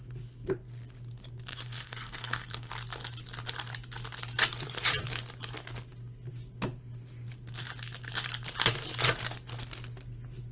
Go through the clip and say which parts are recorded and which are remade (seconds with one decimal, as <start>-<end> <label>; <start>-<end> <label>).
0.0-1.5 recorded; 1.5-2.7 remade; 2.7-10.5 recorded